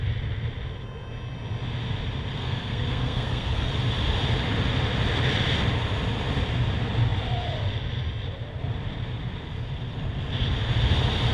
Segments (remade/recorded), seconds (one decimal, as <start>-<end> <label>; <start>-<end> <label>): 0.0-2.3 recorded; 2.3-3.7 remade; 3.7-11.3 recorded